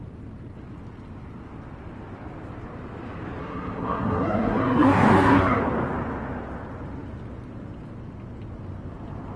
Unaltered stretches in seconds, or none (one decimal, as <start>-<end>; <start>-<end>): 0.0-3.4; 5.6-9.4